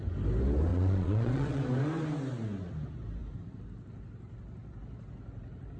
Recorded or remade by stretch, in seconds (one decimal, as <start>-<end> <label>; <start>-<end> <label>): 0.0-0.7 recorded; 0.7-1.6 remade; 1.6-5.8 recorded